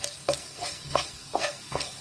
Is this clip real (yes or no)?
no